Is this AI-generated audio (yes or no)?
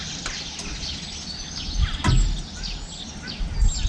no